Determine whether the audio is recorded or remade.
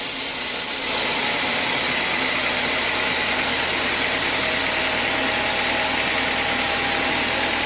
recorded